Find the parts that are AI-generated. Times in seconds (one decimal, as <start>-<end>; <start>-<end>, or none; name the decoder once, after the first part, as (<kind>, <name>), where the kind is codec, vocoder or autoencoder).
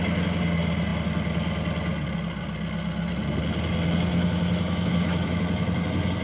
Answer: 4.1-5.4 (autoencoder, DAC-VAE)